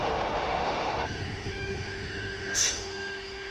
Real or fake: fake